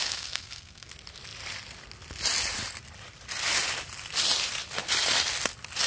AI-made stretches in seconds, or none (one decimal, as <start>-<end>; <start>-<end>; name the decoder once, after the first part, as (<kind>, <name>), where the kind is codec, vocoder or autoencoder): 0.0-0.9 (codec, SNAC)

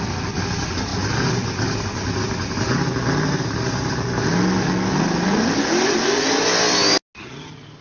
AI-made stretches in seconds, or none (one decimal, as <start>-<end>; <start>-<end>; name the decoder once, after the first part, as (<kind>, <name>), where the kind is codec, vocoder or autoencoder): none

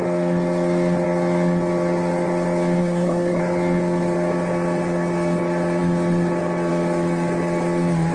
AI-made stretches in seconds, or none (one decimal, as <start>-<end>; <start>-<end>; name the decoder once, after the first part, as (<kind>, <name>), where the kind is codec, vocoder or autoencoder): 2.8-3.4 (codec, SNAC)

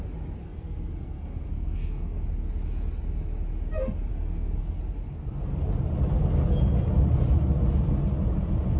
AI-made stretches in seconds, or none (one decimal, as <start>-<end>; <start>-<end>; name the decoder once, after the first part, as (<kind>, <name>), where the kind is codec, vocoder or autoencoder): 0.4-2.2 (codec, SNAC); 4.1-4.8